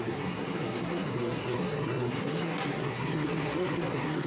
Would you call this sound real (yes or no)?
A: no